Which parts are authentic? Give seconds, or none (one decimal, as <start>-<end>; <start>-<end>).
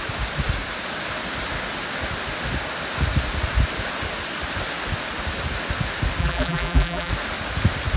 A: 0.0-6.2; 7.1-8.0